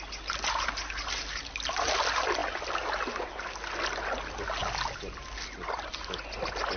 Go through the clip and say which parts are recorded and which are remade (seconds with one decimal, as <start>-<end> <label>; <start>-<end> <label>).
0.0-6.8 recorded